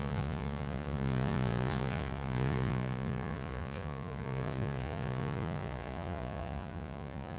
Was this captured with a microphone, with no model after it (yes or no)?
no